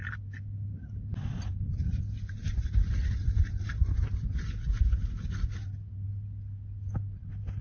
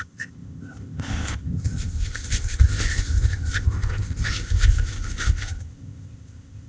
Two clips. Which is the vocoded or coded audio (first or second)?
second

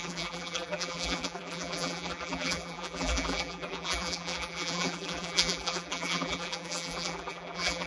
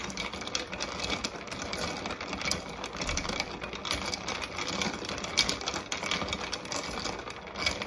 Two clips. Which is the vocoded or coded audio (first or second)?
first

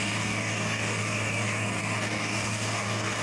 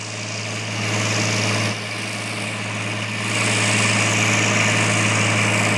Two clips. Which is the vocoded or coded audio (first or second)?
first